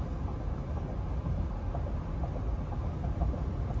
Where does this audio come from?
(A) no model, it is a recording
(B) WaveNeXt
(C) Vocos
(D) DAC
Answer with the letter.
A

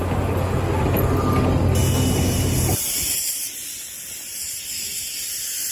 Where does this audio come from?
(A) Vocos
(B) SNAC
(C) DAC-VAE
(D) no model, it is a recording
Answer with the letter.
D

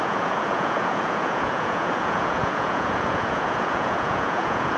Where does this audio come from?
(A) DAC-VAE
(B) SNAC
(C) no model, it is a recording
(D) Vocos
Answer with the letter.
D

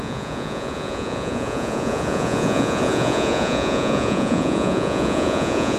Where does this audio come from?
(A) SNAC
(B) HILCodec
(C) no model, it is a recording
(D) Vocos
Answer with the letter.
D